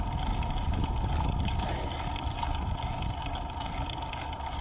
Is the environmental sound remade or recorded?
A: recorded